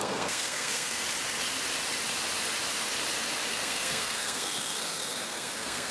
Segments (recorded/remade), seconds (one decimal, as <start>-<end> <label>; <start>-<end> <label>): 0.0-1.0 remade; 1.0-3.5 recorded; 3.5-5.9 remade